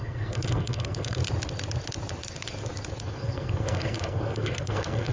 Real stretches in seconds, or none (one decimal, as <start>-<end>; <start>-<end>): 1.2-3.0